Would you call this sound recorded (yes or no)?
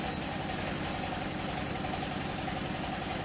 yes